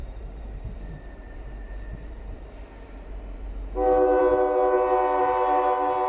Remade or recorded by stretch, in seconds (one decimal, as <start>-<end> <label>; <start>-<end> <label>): 0.0-3.5 remade; 3.5-6.1 recorded